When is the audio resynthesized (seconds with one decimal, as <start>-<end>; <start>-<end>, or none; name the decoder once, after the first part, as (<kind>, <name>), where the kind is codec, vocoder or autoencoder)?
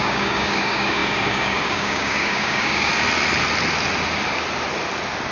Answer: 0.0-2.9 (codec, DAC)